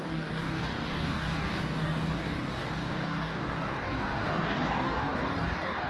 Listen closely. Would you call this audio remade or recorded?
remade